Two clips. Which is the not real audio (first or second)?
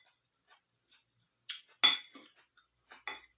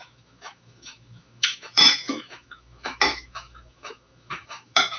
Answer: second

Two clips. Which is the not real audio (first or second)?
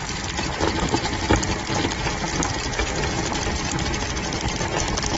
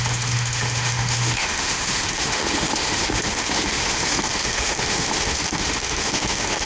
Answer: second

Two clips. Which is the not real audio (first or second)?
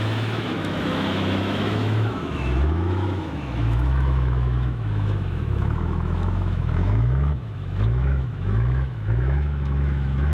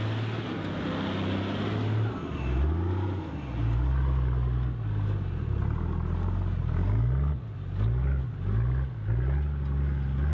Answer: first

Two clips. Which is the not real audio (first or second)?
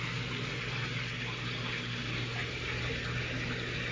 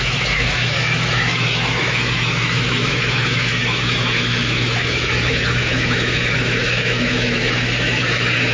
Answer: second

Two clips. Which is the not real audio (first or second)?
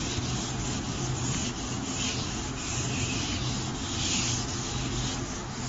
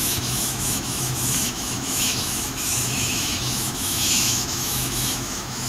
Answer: second